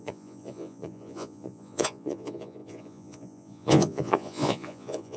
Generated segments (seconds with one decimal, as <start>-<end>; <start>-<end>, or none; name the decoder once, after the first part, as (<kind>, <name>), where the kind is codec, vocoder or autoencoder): 0.0-5.2 (vocoder, Vocos)